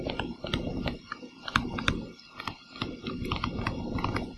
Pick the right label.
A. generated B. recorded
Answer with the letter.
B